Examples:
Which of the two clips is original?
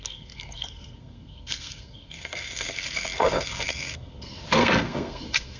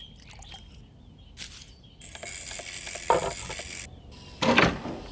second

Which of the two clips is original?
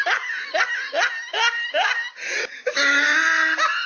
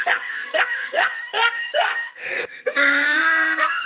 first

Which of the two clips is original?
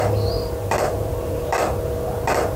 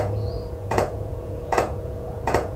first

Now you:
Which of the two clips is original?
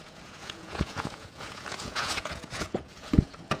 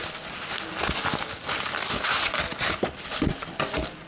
second